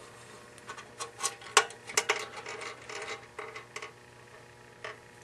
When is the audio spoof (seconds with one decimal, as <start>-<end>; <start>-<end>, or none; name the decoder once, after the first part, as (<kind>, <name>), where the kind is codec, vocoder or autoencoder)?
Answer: none